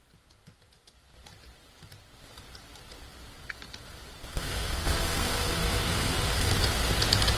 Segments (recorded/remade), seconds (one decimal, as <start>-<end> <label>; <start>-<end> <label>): 0.0-4.3 recorded; 4.3-6.6 remade; 6.6-7.4 recorded